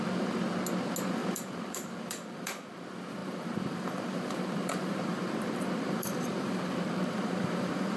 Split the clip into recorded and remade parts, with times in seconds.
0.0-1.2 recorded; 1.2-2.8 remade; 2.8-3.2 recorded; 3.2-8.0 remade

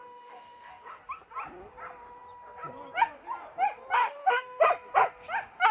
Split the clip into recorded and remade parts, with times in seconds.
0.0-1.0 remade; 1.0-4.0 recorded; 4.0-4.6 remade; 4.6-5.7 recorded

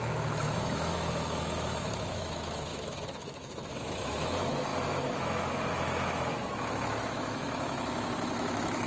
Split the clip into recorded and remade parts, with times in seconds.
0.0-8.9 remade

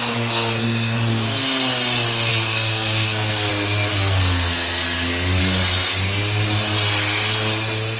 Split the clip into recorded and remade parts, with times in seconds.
0.0-2.3 recorded; 2.3-3.5 remade; 3.5-3.9 recorded; 3.9-5.4 remade; 5.4-8.0 recorded

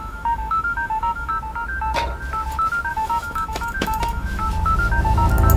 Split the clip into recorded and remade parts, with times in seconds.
0.0-1.3 remade; 1.3-2.9 recorded; 2.9-4.4 remade; 4.4-5.6 recorded

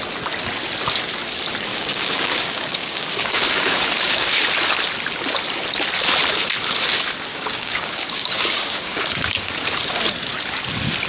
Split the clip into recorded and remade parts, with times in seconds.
0.0-1.7 recorded; 1.7-4.4 remade; 4.4-7.3 recorded; 7.3-9.0 remade; 9.0-11.1 recorded

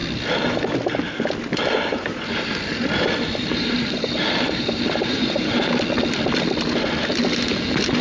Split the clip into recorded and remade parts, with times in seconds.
0.0-1.9 recorded; 1.9-5.7 remade; 5.7-8.0 recorded

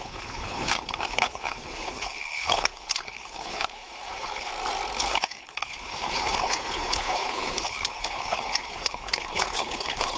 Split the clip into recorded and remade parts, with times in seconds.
0.0-4.5 remade; 4.5-5.0 recorded; 5.0-10.2 remade